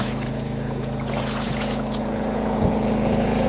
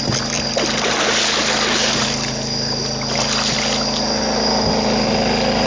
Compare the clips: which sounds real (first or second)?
second